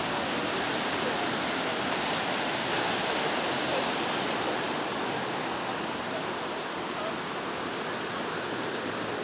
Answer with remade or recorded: recorded